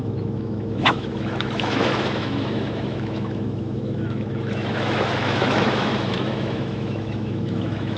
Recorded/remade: remade